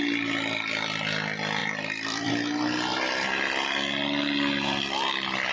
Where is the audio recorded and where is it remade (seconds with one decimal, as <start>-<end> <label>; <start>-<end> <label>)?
0.0-1.6 recorded; 1.6-2.3 remade; 2.3-5.5 recorded